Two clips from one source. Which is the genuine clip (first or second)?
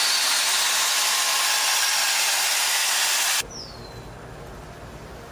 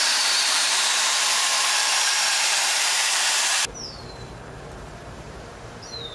first